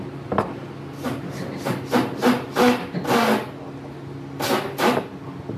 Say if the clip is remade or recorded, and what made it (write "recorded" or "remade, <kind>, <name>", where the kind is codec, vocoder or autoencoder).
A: recorded